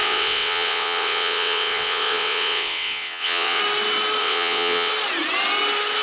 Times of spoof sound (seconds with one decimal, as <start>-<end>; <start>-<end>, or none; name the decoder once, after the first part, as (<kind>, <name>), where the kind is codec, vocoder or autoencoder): 0.0-3.6 (vocoder, WaveNeXt); 4.2-4.9